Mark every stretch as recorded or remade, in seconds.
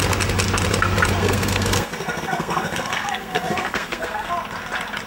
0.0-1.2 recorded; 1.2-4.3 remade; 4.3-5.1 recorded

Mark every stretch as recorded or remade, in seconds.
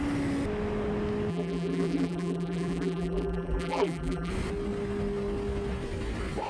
0.0-1.3 recorded; 1.3-4.3 remade; 4.3-6.5 recorded